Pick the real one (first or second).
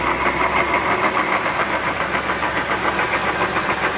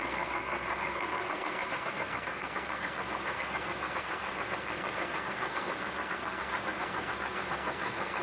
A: first